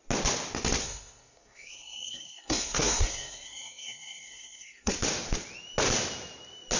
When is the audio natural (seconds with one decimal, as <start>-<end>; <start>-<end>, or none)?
0.0-0.8; 4.9-6.8